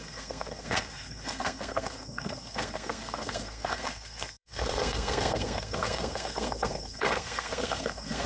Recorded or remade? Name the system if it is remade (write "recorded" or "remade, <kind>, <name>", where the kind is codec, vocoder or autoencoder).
remade, codec, SNAC